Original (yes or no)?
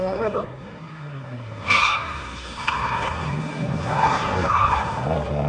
no